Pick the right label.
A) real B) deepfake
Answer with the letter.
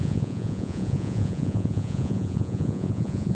B